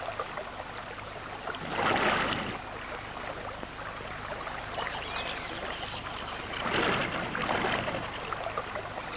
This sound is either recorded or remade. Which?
recorded